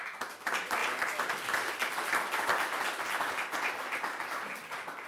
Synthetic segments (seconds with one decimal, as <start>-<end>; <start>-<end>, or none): none